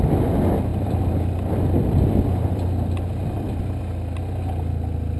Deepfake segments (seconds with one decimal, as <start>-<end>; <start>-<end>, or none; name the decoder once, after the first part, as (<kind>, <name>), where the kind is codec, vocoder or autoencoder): 0.7-3.8 (vocoder, BigVGAN v2)